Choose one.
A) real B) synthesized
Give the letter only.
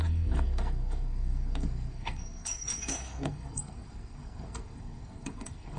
B